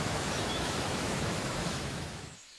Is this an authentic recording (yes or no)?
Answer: no